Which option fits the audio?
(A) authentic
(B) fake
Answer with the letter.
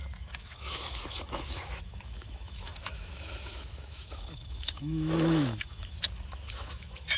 B